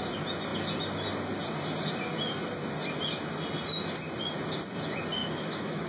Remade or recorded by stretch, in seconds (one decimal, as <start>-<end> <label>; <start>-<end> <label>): 0.0-5.2 recorded; 5.2-5.9 remade